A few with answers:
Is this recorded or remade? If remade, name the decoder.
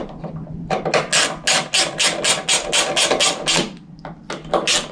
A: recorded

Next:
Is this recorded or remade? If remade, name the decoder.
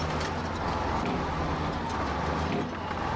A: recorded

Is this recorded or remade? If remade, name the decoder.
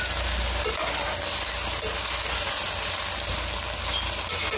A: recorded